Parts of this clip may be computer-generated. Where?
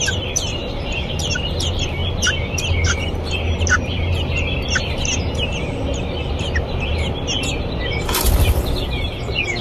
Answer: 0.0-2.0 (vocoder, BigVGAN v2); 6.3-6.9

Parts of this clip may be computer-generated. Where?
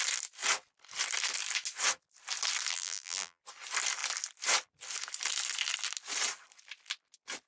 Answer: 2.7-3.4 (vocoder, BigVGAN v2)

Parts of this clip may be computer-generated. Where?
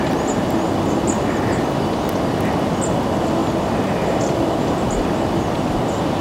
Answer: none